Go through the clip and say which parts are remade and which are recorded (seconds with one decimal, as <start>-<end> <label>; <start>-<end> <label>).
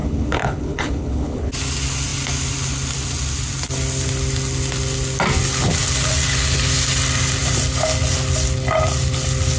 0.0-1.5 remade; 1.5-9.6 recorded